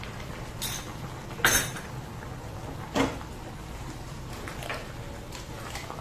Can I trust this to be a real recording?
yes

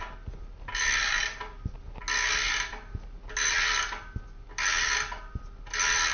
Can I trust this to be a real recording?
yes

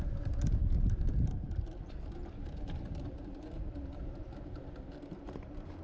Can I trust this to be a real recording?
no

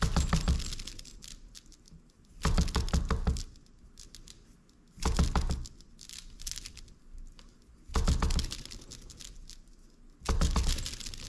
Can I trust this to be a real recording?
yes